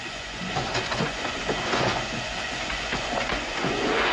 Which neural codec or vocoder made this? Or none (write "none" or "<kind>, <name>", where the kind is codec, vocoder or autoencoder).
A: vocoder, Vocos